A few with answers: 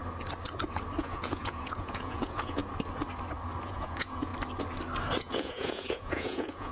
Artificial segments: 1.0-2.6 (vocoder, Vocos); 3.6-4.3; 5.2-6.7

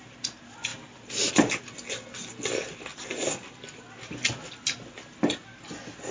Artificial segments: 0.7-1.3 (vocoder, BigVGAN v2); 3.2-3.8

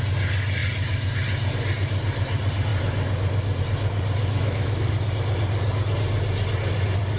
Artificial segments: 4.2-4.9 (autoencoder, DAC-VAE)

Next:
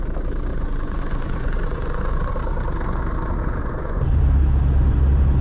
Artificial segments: 0.5-2.3 (vocoder, Vocos); 3.6-4.2